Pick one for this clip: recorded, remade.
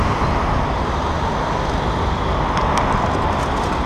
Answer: recorded